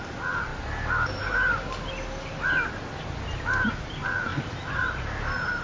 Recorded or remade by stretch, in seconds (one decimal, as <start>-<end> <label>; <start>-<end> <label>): 0.0-5.6 recorded